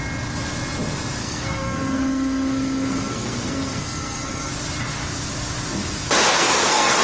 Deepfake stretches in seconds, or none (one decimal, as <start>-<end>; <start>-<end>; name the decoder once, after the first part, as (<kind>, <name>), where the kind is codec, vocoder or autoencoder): 1.2-4.5 (codec, SNAC); 6.3-7.0